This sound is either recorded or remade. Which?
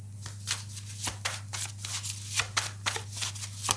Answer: recorded